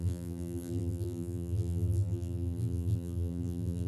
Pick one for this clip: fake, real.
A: fake